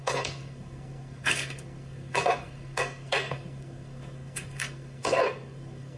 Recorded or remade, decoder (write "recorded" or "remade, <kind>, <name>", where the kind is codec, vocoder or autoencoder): remade, codec, SNAC